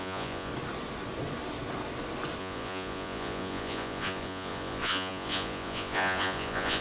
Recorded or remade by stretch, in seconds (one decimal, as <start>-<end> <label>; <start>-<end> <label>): 0.0-0.5 remade; 0.5-2.4 recorded; 2.4-6.8 remade

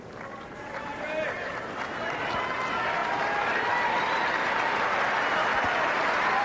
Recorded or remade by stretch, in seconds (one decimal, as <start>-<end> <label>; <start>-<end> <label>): 0.0-6.4 recorded

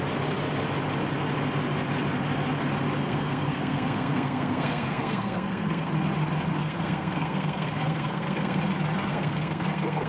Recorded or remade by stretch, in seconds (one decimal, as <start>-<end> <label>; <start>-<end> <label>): 0.0-3.0 recorded; 3.0-5.9 remade; 5.9-6.6 recorded; 6.6-8.6 remade; 8.6-9.1 recorded; 9.1-10.1 remade